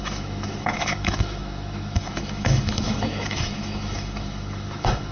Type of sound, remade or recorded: remade